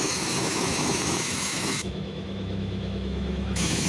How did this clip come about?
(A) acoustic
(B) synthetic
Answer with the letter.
B